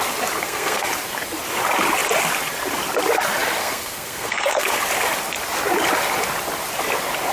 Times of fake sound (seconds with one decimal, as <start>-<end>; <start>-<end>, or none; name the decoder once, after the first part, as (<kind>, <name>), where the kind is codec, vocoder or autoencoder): 0.4-0.9 (codec, SNAC); 3.6-4.8